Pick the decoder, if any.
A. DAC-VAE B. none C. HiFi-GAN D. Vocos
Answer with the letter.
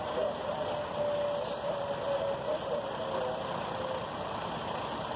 B